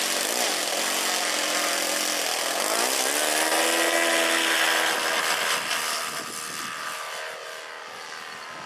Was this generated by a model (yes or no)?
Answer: no